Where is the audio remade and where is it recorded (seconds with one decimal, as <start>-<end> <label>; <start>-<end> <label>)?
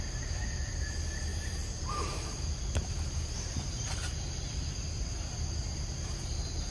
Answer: 0.0-1.3 recorded; 1.3-3.9 remade; 3.9-5.6 recorded; 5.6-6.7 remade